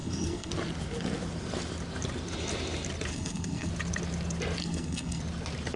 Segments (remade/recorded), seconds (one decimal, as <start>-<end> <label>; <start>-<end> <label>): 0.0-0.5 remade; 0.5-3.1 recorded; 3.1-3.7 remade; 3.7-4.6 recorded; 4.6-5.2 remade; 5.2-5.8 recorded